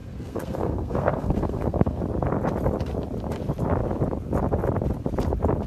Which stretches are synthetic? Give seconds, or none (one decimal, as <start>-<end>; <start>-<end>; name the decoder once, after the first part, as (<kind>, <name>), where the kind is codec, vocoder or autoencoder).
0.0-2.0 (codec, SNAC)